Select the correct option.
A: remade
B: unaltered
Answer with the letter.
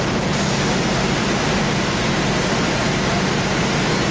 B